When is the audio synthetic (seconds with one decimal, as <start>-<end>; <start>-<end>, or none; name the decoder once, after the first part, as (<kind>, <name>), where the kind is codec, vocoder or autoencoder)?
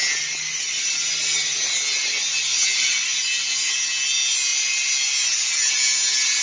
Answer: none